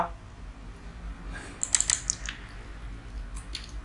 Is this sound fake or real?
real